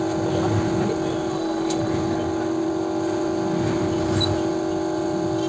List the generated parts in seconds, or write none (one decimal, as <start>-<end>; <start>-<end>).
1.3-1.9